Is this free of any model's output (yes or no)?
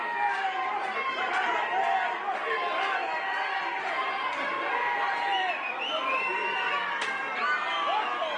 yes